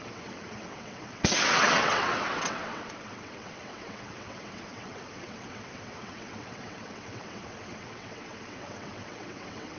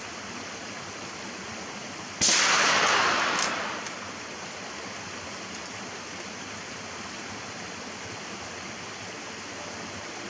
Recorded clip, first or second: second